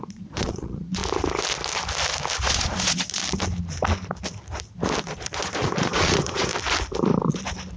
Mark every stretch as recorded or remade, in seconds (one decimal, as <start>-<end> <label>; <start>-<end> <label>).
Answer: 0.0-1.0 remade; 1.0-2.4 recorded; 2.4-3.2 remade; 3.2-5.0 recorded; 5.0-6.5 remade; 6.5-7.8 recorded